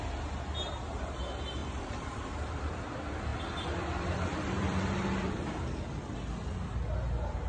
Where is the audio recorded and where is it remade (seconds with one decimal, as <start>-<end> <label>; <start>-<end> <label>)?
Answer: 0.0-1.6 recorded; 1.6-2.8 remade; 2.8-3.3 recorded; 3.3-5.8 remade; 5.8-7.5 recorded